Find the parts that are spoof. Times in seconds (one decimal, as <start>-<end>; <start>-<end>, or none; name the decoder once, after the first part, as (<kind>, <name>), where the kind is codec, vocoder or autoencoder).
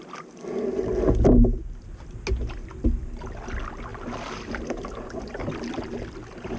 none